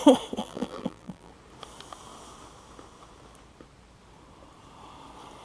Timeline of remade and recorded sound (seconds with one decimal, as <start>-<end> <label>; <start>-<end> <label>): 0.0-0.4 recorded; 0.4-1.3 remade; 1.3-5.4 recorded